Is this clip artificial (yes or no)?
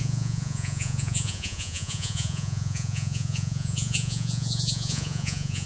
yes